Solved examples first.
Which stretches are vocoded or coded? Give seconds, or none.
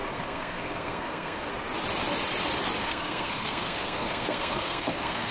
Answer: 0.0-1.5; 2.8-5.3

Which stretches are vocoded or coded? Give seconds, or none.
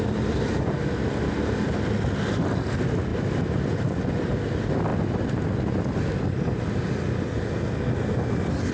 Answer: none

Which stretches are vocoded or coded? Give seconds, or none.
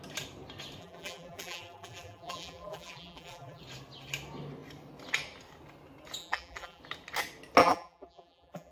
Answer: 0.8-3.6; 6.2-6.8; 7.6-8.7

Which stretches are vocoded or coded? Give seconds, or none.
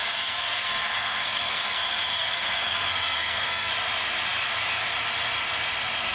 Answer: 0.0-3.7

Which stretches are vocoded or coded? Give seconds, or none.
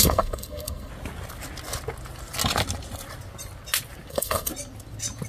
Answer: 0.0-0.9; 4.1-4.5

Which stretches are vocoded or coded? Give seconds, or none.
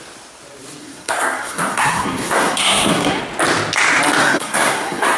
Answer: 0.8-3.2; 4.2-5.2